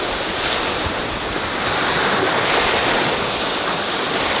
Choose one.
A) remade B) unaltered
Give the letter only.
B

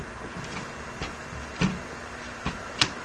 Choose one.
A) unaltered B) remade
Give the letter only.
A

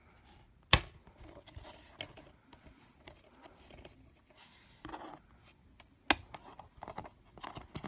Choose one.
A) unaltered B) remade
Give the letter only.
A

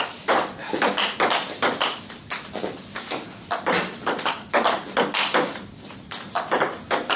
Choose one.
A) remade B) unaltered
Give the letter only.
B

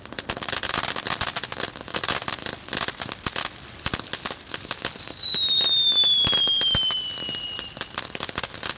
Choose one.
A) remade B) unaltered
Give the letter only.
B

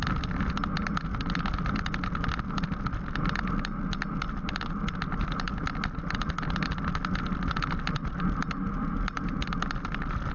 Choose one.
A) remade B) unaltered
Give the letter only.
B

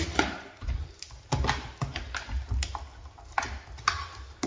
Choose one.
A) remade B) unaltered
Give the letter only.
B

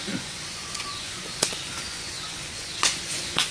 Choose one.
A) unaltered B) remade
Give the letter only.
B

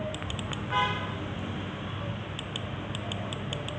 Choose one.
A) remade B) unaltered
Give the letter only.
B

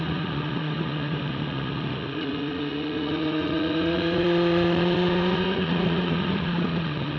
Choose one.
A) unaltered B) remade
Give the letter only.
B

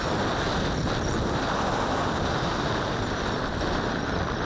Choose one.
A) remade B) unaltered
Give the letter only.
B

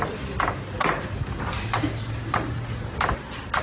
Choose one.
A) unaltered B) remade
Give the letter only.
A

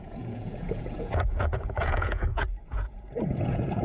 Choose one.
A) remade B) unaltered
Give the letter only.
A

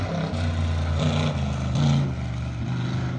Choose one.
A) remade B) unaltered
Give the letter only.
B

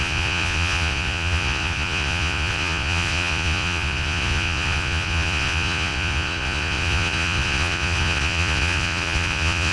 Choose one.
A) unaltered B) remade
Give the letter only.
B